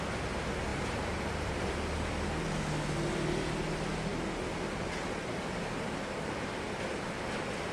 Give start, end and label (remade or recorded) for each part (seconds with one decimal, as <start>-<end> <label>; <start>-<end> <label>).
0.0-0.7 recorded; 0.7-1.7 remade; 1.7-7.7 recorded